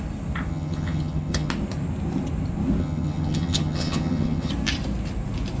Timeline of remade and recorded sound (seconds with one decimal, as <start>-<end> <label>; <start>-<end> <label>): 0.0-0.5 recorded; 0.5-1.5 remade; 1.5-2.8 recorded; 2.8-4.5 remade; 4.5-5.6 recorded